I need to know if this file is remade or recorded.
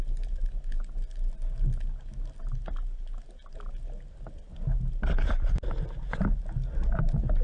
recorded